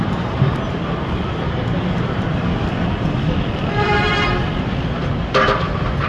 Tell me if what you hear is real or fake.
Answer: fake